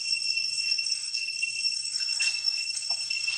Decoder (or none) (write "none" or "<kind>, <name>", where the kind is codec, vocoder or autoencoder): codec, SNAC